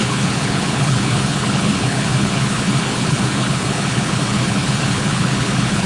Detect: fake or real fake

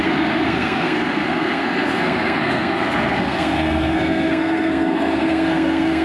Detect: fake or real fake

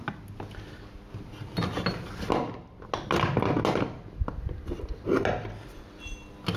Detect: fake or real real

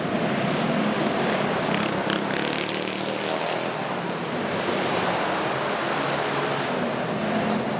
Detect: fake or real real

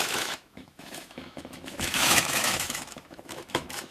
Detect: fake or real fake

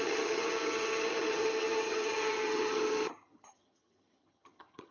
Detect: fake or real fake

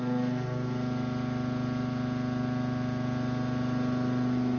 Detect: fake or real real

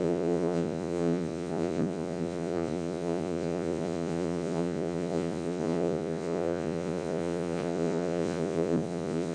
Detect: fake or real fake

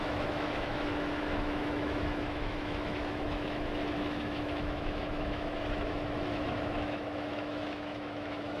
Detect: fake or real fake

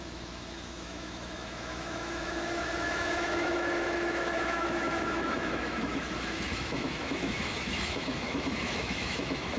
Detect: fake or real fake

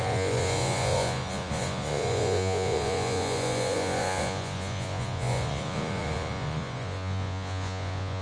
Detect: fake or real fake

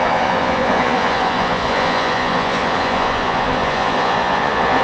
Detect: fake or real fake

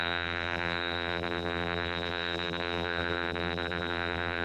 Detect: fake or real fake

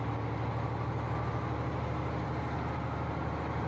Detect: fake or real real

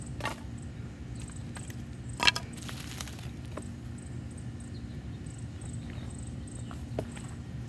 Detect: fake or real real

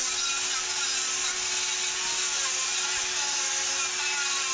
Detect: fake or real real